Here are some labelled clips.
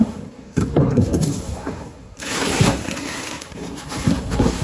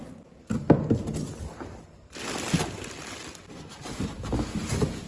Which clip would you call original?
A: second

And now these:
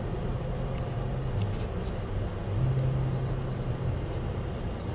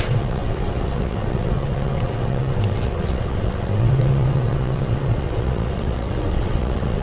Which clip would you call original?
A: first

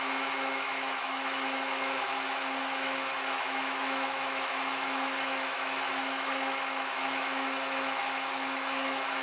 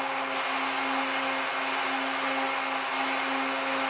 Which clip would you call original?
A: second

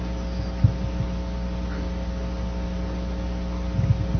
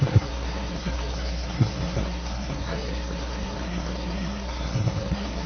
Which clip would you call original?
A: first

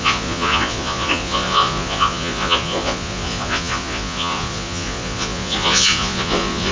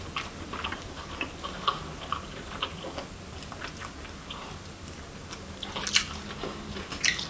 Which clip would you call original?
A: second